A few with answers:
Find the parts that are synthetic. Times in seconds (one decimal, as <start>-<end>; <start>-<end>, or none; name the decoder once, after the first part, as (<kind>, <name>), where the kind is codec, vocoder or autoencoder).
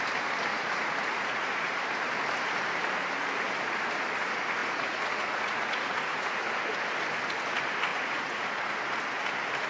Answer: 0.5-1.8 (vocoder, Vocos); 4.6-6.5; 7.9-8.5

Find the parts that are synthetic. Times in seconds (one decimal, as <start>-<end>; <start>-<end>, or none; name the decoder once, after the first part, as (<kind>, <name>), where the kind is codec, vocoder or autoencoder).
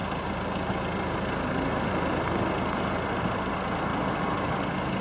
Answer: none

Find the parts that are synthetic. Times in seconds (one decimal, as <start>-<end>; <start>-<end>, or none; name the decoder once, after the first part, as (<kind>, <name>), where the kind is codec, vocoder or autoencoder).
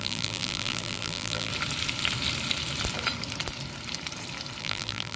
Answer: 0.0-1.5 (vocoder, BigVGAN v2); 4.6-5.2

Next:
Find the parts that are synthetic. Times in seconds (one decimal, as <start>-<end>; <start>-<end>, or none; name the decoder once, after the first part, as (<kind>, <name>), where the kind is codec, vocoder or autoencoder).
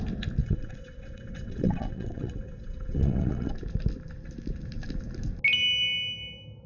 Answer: 0.4-3.5 (vocoder, WaveNeXt)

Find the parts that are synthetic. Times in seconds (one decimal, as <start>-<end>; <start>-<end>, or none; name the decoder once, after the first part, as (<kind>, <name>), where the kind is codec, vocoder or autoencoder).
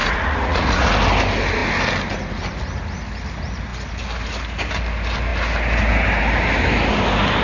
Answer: 0.0-0.9 (vocoder, Vocos)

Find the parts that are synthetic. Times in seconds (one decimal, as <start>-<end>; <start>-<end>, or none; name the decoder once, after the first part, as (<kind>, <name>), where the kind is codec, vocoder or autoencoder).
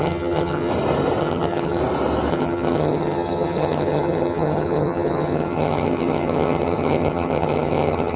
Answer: 0.0-0.7 (vocoder, HiFi-GAN); 1.2-1.8; 2.3-8.2